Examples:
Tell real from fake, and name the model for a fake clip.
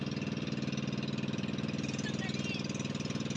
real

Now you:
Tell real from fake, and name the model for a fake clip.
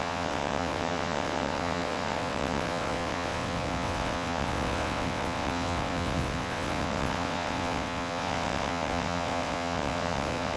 fake, vocoder, WaveNeXt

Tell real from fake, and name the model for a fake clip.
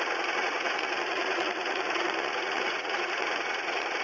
fake, vocoder, Vocos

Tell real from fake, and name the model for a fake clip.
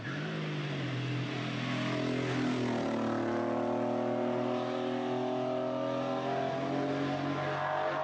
real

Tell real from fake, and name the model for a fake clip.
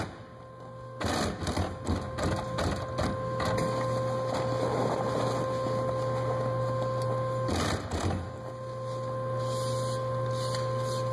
real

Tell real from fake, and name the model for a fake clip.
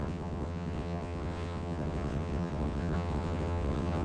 fake, vocoder, WaveNeXt